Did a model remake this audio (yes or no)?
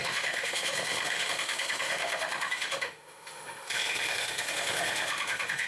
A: yes